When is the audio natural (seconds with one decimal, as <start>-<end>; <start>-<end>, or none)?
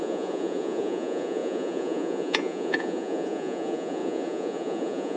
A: none